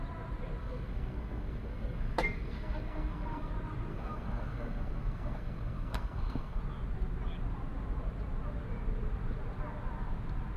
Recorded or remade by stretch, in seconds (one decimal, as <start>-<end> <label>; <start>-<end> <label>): 0.0-0.6 recorded; 0.6-3.5 remade; 3.5-3.9 recorded; 3.9-6.6 remade; 6.6-10.6 recorded